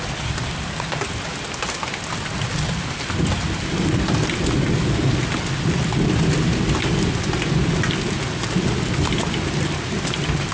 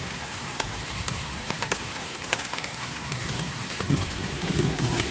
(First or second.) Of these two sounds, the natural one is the first